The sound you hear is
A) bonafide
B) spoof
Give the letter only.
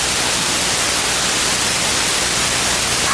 A